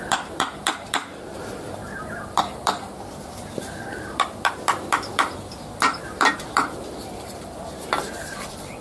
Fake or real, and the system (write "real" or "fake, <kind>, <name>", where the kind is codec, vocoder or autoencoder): fake, vocoder, BigVGAN v2